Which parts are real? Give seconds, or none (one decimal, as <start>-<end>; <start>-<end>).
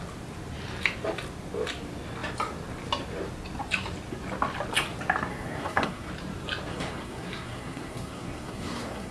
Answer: 0.0-5.3; 6.1-6.7